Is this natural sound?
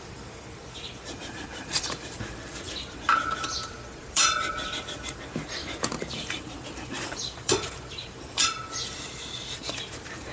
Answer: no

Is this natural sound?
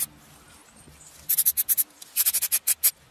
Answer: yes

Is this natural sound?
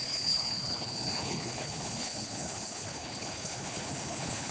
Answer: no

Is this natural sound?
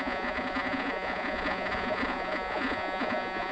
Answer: no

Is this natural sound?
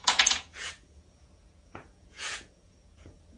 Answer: no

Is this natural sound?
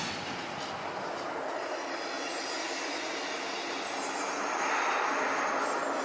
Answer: yes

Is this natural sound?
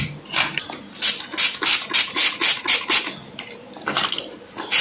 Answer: yes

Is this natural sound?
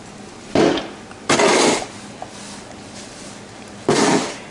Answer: yes